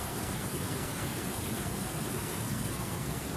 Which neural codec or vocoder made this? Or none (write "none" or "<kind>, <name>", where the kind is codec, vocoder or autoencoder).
codec, SNAC